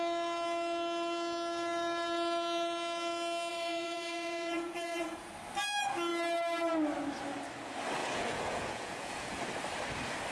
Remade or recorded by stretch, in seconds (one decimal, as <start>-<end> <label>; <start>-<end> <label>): 0.0-3.5 recorded; 3.5-5.3 remade; 5.3-8.0 recorded; 8.0-9.4 remade; 9.4-10.3 recorded